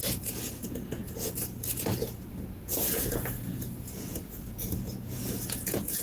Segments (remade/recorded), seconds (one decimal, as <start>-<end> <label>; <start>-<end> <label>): 0.0-6.0 remade